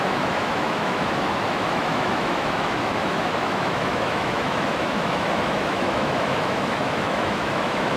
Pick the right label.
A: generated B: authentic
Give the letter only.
A